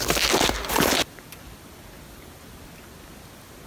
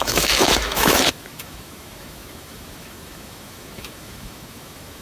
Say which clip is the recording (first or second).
first